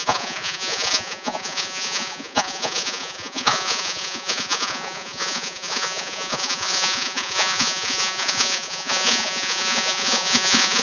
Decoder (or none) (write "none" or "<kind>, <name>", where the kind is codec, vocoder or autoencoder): vocoder, Vocos